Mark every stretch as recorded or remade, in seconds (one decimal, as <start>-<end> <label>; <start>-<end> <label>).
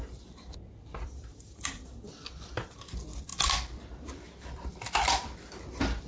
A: 0.0-1.2 recorded; 1.2-1.9 remade; 1.9-6.1 recorded